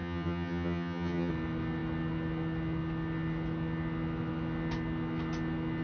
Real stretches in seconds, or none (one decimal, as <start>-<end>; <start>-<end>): 1.3-5.8